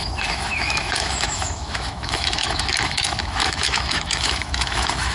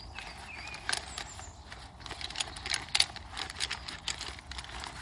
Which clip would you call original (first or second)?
second